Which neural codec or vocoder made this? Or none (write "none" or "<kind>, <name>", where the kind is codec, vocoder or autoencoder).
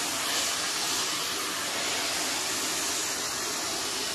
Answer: none